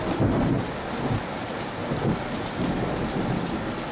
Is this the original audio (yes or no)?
yes